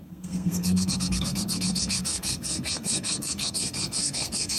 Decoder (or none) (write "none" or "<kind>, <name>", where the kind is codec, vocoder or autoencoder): codec, SNAC